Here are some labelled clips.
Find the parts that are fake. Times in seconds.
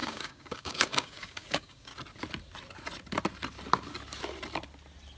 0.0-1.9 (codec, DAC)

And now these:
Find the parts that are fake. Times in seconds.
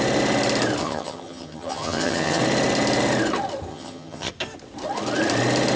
0.8-2.4 (vocoder, HiFi-GAN); 3.7-4.3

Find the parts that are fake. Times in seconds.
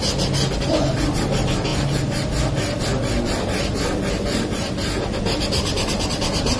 none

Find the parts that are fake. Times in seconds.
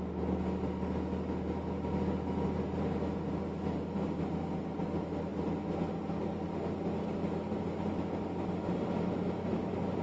none